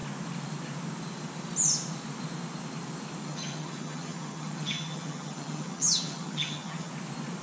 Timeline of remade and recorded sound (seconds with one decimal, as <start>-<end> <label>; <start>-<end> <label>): 0.0-3.2 recorded; 3.2-6.9 remade; 6.9-7.4 recorded